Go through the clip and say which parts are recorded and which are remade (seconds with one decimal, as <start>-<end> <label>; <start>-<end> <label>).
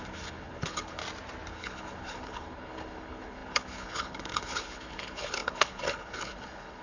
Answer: 0.0-1.0 remade; 1.0-1.5 recorded; 1.5-6.8 remade